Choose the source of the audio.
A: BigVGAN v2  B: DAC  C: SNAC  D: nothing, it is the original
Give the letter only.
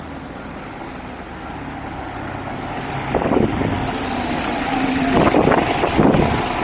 D